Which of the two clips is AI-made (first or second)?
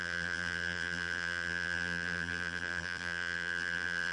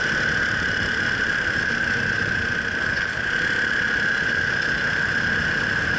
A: first